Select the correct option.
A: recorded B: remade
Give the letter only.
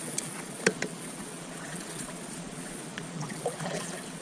B